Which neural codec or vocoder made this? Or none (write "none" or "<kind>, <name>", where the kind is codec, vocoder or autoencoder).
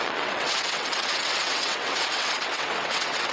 vocoder, WaveNeXt